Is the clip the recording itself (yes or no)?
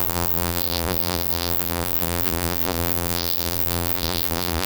no